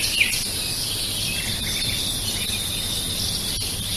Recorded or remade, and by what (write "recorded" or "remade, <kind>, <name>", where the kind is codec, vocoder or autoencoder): recorded